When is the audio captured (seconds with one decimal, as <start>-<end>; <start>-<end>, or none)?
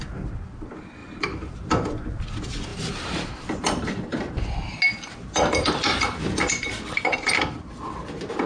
0.0-1.0; 1.7-2.7; 3.9-8.5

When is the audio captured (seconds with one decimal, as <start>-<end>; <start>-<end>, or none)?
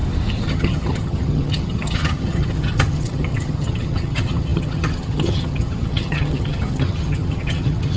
0.0-0.5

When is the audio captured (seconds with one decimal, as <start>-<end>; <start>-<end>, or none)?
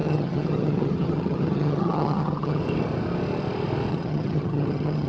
2.6-3.9